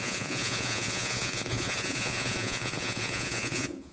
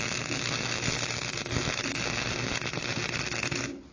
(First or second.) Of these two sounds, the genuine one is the second